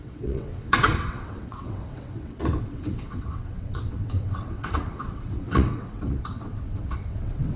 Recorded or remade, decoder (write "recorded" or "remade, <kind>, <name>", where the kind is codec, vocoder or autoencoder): remade, vocoder, WaveNeXt